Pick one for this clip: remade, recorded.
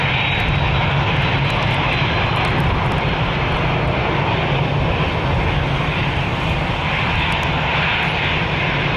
recorded